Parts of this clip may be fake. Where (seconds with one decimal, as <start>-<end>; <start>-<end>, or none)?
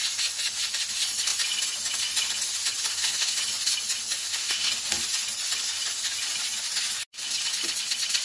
2.9-3.4; 4.2-4.7